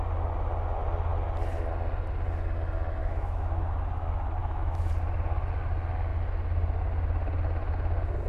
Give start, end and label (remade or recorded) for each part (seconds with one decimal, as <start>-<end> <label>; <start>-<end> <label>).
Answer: 0.0-3.0 recorded; 3.0-3.6 remade; 3.6-4.4 recorded; 4.4-4.9 remade; 4.9-8.3 recorded